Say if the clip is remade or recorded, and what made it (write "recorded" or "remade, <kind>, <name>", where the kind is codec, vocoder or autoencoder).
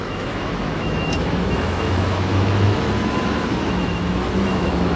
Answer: remade, autoencoder, DAC-VAE